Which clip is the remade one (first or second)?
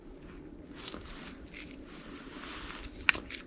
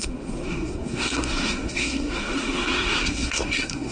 second